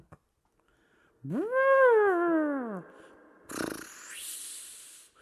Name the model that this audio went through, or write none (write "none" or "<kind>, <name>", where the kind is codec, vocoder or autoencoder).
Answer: none